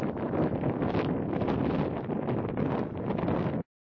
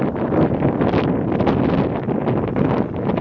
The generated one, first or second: first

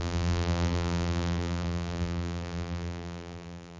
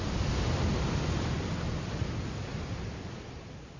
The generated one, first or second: first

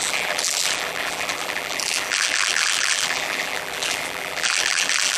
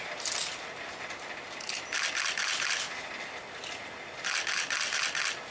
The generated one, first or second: first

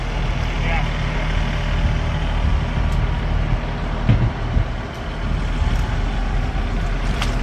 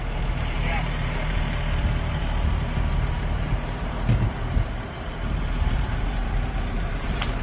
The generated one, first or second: second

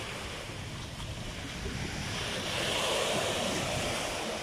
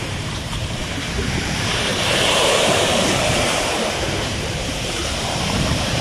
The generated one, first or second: second